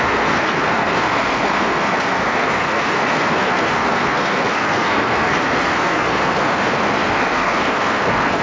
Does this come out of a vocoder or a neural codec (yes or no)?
yes